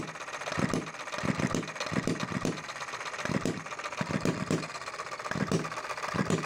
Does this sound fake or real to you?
real